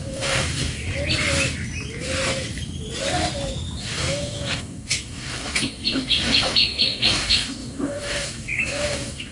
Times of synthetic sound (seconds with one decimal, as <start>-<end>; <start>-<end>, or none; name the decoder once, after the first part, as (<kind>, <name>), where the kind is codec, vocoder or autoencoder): 0.0-0.9 (codec, DAC); 3.8-9.3